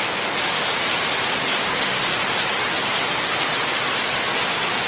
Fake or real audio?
real